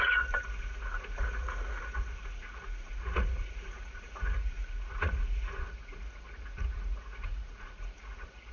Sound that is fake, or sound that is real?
fake